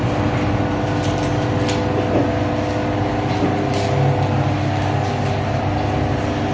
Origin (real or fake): real